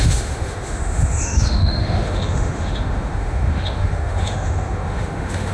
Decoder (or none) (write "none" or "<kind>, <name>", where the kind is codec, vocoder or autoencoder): autoencoder, DAC-VAE